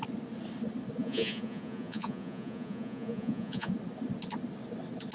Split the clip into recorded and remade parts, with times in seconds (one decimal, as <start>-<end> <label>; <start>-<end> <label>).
0.0-1.0 recorded; 1.0-3.7 remade; 3.7-5.1 recorded